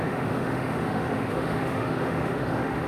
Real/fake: fake